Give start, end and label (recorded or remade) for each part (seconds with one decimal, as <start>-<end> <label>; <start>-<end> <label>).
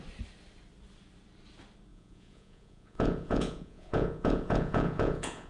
0.0-1.9 recorded; 1.9-5.5 remade